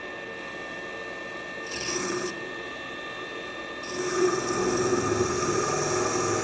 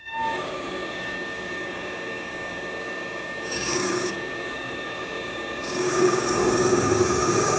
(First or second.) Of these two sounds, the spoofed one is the second